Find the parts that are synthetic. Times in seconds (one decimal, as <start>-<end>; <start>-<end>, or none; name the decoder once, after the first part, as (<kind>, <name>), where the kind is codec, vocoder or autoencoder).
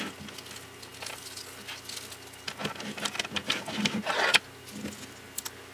none